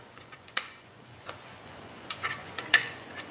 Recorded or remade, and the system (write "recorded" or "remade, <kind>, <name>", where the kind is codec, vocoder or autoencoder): remade, vocoder, Vocos